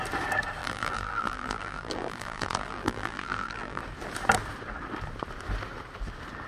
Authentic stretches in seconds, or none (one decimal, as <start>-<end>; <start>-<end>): 0.0-0.6; 3.8-6.5

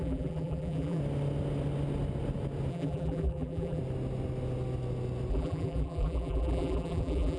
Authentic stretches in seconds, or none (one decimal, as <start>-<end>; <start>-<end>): 1.0-2.7; 3.8-5.3